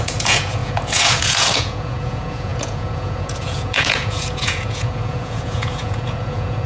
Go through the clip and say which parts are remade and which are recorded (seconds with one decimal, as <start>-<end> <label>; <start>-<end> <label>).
0.0-6.7 remade